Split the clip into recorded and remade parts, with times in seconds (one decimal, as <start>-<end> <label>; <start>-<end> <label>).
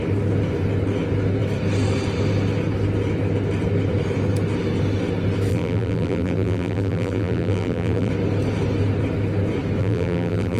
0.0-5.5 recorded; 5.5-8.1 remade; 8.1-9.8 recorded; 9.8-10.6 remade